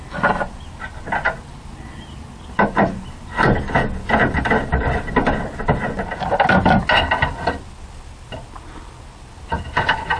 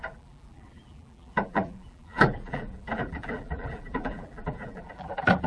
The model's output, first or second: second